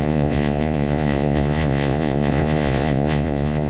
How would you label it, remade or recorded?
remade